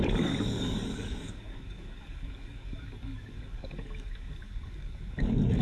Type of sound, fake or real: fake